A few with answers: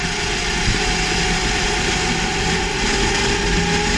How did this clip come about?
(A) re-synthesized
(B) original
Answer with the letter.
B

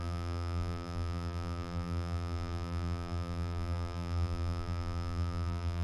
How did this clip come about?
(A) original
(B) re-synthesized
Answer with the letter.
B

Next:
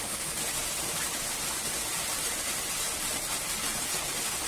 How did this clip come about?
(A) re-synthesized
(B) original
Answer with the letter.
B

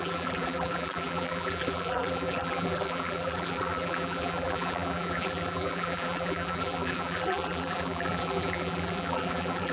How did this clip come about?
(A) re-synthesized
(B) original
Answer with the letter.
A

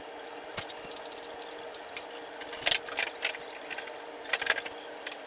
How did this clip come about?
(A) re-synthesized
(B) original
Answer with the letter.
B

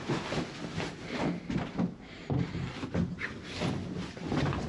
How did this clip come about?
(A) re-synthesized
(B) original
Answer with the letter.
B